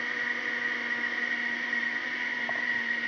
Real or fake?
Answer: real